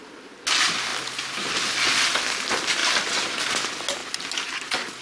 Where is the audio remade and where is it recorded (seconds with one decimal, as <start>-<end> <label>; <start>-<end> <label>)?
0.0-5.0 recorded